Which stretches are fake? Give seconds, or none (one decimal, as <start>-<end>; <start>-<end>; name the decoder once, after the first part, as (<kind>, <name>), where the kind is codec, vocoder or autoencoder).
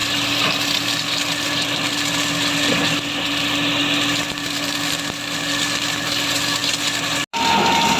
none